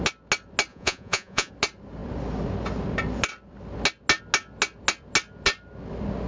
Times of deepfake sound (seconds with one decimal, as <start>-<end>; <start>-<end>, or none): 0.7-1.5